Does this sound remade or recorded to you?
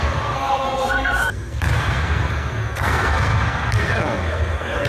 remade